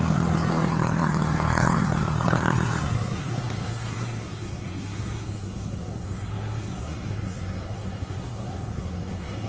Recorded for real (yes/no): no